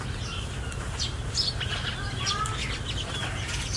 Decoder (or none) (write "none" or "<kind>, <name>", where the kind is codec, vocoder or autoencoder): none